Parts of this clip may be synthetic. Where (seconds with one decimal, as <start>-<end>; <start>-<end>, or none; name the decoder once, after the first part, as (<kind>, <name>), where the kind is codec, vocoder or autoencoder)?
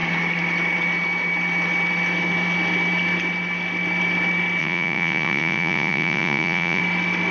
4.6-6.8 (vocoder, Vocos)